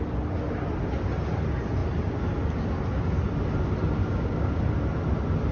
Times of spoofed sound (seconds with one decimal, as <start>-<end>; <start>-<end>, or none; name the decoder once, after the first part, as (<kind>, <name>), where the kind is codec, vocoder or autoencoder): 4.0-4.6 (codec, DAC)